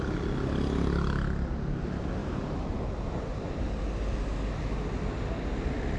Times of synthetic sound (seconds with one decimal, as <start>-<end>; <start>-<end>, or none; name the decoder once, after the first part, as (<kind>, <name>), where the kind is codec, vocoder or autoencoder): 2.2-3.6 (vocoder, BigVGAN v2)